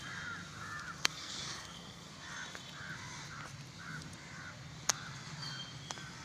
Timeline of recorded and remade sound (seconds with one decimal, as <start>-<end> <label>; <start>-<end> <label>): 0.0-1.0 recorded; 1.0-2.1 remade; 2.1-6.2 recorded